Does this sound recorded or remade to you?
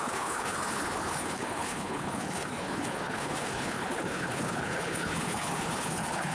remade